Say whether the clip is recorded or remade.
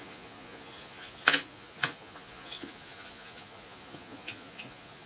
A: remade